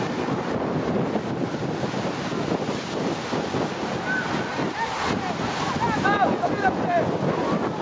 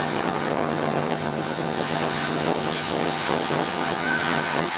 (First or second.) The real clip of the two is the first